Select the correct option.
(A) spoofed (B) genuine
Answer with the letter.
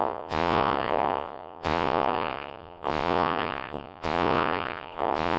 A